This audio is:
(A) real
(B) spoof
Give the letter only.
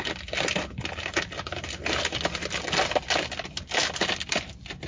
A